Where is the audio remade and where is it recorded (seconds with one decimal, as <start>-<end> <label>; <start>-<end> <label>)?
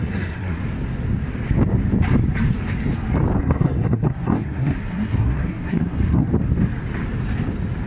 0.0-0.6 remade; 0.6-3.4 recorded; 3.4-6.3 remade; 6.3-7.9 recorded